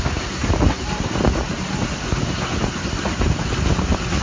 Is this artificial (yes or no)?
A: no